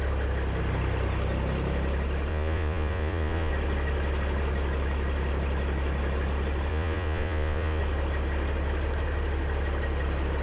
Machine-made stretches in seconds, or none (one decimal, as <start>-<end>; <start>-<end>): 2.3-3.5; 6.7-7.8